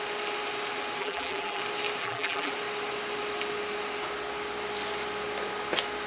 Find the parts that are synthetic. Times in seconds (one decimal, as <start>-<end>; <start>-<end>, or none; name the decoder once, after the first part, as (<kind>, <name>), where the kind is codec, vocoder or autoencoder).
1.0-1.6 (vocoder, BigVGAN v2); 2.0-2.5